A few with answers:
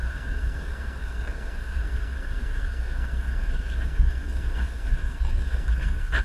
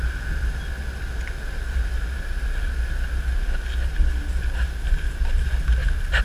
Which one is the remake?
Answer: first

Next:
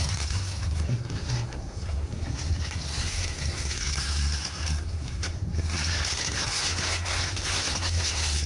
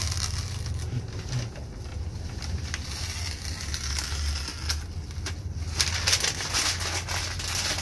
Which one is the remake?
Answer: first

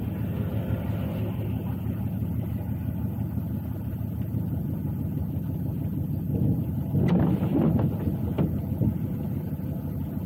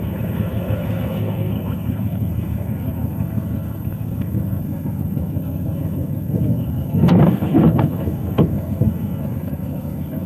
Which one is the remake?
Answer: second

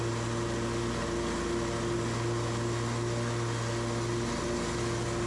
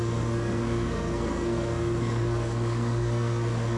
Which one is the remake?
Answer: second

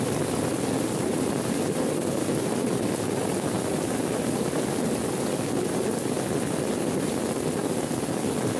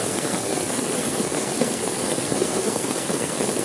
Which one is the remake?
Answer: second